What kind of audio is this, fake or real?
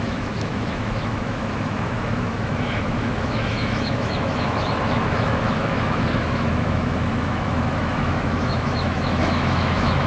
fake